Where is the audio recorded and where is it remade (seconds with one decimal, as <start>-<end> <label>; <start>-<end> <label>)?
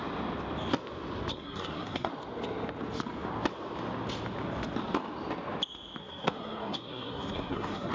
0.0-1.3 recorded; 1.3-2.1 remade; 2.1-6.0 recorded; 6.0-7.9 remade